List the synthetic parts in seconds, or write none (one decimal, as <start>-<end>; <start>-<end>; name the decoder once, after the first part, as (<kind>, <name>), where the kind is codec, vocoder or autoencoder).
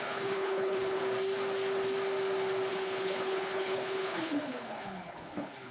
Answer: 0.0-1.0 (codec, HILCodec); 2.7-5.7